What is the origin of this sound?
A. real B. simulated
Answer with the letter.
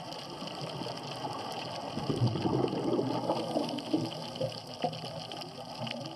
A